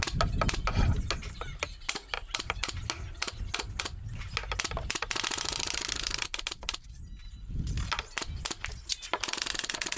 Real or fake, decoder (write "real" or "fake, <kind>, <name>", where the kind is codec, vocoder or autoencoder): real